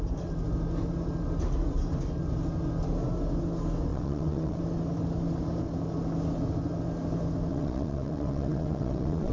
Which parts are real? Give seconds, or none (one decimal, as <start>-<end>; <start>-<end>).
0.0-3.9; 4.6-7.5